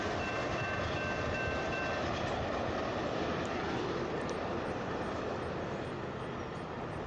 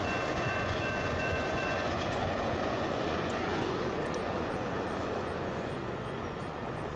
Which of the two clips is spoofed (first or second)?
second